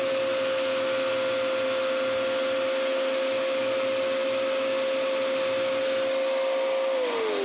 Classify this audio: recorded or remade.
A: recorded